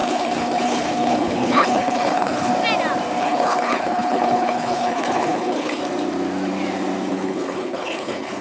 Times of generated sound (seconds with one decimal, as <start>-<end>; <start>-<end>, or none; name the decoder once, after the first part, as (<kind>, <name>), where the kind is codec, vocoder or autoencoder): 0.0-2.5 (codec, HILCodec); 3.2-5.8; 7.1-8.4